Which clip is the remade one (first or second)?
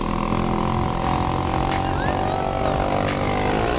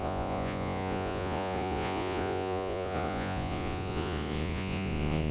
second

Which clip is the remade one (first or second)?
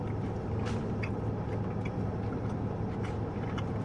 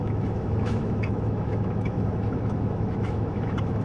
second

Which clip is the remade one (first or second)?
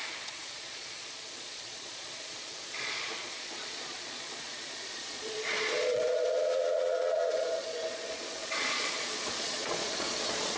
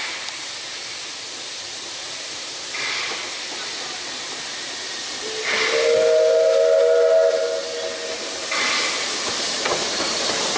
first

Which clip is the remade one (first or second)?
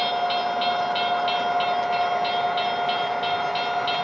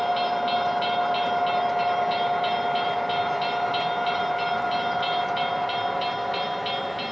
second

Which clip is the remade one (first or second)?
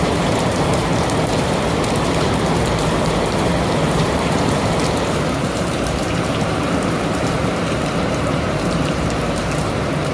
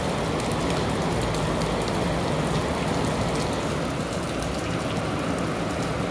first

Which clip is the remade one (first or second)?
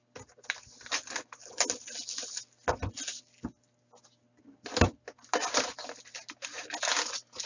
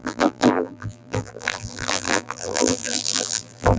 second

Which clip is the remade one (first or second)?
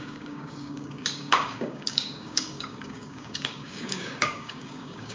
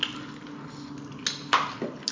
first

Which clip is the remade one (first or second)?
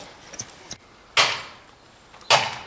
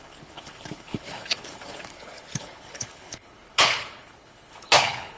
second